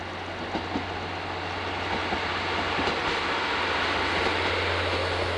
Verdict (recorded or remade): recorded